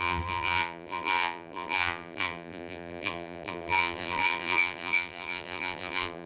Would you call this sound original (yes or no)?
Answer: no